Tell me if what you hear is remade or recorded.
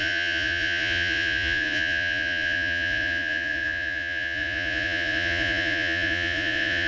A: remade